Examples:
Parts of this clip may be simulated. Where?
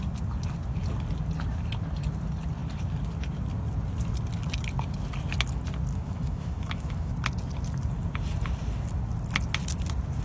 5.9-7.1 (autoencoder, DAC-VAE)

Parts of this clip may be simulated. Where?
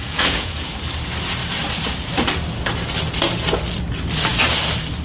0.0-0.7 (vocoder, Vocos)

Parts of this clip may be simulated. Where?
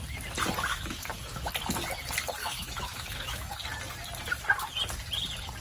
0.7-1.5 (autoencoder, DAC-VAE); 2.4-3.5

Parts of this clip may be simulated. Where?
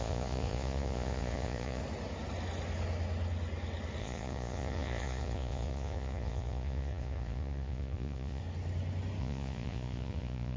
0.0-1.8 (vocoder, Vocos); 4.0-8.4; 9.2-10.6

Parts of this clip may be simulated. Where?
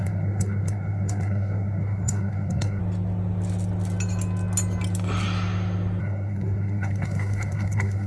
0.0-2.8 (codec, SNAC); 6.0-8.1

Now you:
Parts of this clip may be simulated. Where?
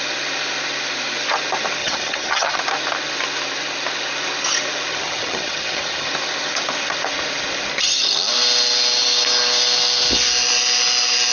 1.8-2.6 (vocoder, HiFi-GAN); 4.9-6.1